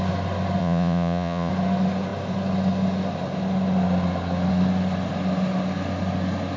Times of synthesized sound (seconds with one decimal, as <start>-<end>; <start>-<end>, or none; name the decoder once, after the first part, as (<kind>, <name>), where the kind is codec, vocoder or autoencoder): 0.6-1.5 (vocoder, Vocos)